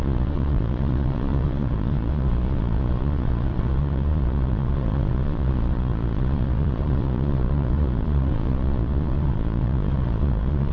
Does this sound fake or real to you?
fake